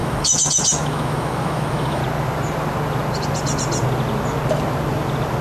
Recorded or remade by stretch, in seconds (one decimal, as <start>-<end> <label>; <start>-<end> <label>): 0.0-2.0 remade; 2.0-5.4 recorded